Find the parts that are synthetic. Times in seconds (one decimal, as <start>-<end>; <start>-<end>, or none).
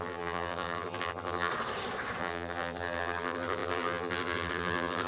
0.0-1.5; 2.2-5.1